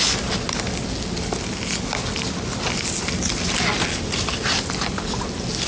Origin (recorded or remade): recorded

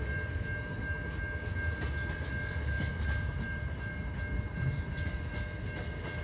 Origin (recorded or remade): recorded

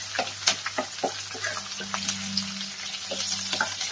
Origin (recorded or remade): recorded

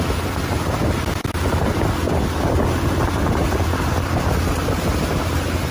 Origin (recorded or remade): recorded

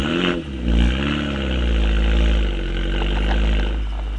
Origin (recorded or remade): recorded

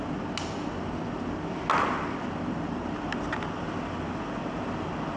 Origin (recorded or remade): recorded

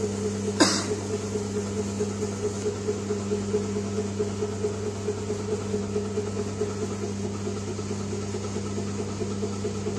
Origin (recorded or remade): recorded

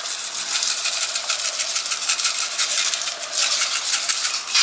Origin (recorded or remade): recorded